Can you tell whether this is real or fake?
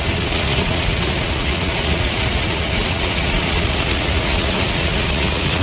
fake